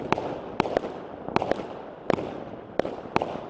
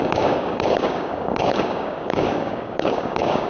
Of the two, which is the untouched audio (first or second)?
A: first